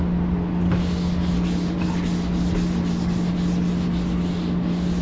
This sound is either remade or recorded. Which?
recorded